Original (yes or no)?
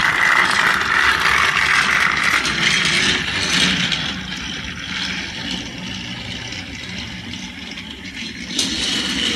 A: yes